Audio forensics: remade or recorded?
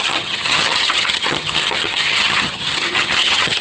remade